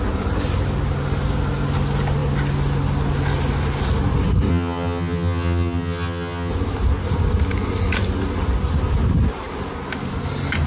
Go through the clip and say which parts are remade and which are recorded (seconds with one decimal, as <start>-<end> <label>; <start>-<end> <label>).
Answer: 0.0-4.5 recorded; 4.5-6.5 remade; 6.5-10.7 recorded